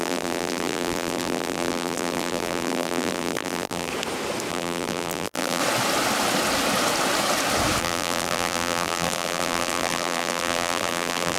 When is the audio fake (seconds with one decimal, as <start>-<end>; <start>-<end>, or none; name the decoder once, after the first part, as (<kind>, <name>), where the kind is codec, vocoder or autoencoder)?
0.0-3.9 (vocoder, BigVGAN v2); 4.5-5.6; 7.8-11.4